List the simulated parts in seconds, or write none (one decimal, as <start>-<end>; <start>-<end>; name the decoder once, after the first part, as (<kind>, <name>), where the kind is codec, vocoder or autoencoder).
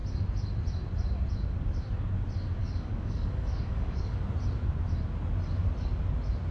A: 2.6-4.2 (codec, DAC)